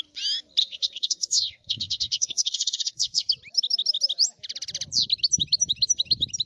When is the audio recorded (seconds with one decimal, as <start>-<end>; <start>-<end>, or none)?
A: 0.0-0.6; 3.3-6.5